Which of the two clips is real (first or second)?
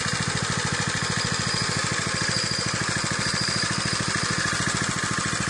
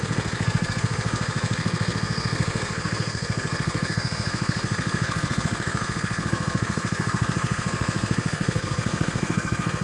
first